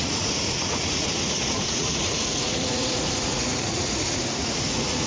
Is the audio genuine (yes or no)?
no